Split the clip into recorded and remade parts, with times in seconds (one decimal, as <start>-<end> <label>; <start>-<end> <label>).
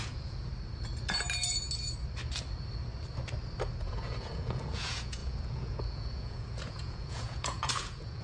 0.0-0.5 remade; 0.5-3.8 recorded; 3.8-8.2 remade